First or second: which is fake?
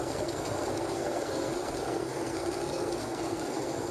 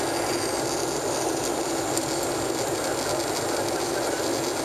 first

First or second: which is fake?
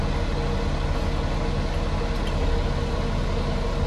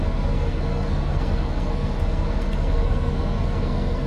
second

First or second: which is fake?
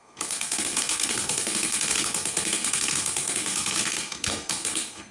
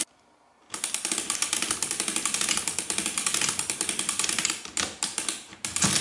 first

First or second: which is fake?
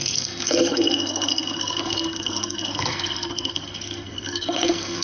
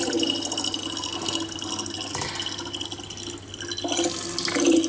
first